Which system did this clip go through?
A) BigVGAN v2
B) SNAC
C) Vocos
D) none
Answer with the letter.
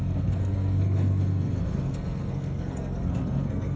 B